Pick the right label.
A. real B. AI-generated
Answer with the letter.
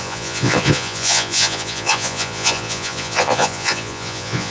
B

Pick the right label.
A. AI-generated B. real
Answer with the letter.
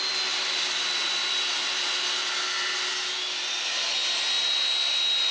B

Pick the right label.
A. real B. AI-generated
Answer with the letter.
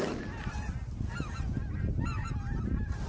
A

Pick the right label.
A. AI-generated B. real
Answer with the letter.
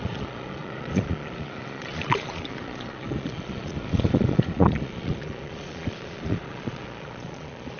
A